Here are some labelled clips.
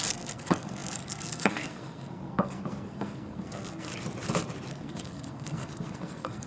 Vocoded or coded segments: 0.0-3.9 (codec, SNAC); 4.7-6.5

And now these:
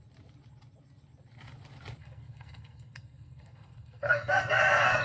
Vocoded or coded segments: 2.0-5.0 (codec, SNAC)

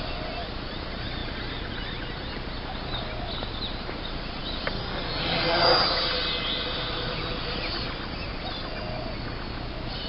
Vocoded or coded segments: none

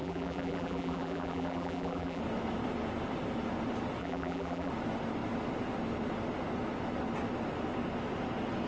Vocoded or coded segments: 0.0-2.2 (vocoder, BigVGAN v2); 4.0-4.7